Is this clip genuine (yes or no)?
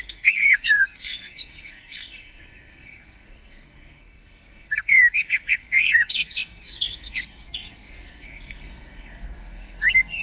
no